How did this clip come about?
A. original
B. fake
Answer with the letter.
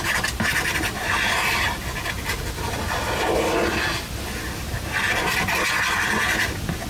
A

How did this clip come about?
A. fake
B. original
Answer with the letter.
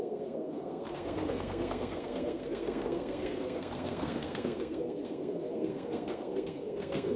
A